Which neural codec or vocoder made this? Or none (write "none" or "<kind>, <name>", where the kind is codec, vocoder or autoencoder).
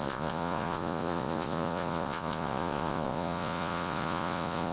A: vocoder, Vocos